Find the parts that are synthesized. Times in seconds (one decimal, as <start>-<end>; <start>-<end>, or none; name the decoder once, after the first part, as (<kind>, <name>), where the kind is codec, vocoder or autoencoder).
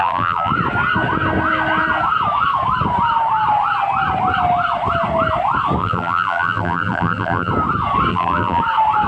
0.0-0.5 (vocoder, BigVGAN v2); 5.8-7.5; 8.1-8.6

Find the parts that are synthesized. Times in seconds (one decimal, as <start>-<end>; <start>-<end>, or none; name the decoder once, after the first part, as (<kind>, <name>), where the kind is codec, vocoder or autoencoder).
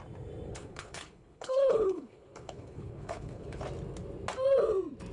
0.5-3.6 (codec, HILCodec)